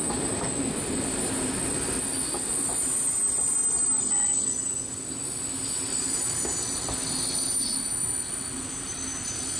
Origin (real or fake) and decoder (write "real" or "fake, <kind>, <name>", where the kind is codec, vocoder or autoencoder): real